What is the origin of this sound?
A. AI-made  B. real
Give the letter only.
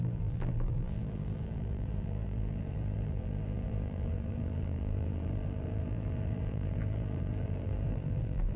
A